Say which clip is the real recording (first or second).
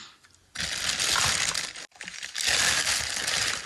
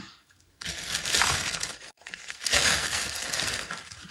first